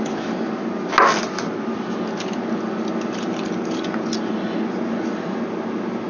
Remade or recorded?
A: recorded